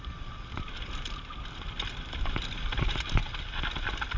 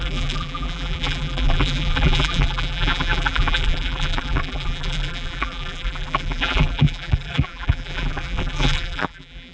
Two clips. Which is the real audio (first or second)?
first